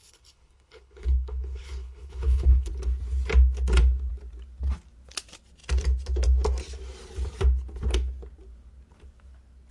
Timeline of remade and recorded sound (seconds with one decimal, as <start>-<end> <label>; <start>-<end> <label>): 0.0-2.7 remade; 2.7-9.7 recorded